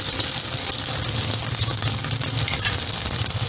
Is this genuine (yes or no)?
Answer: yes